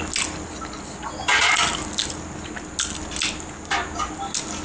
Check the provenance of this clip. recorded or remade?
recorded